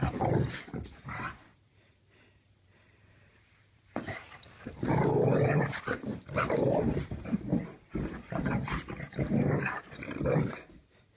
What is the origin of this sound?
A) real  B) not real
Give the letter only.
B